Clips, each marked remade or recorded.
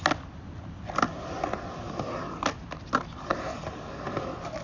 recorded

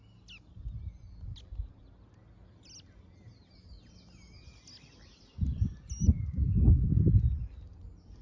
recorded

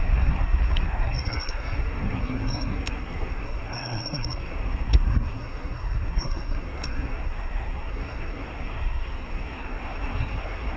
remade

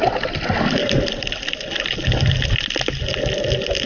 recorded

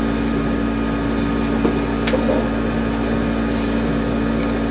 recorded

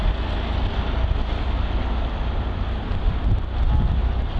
recorded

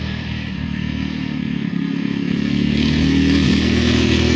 remade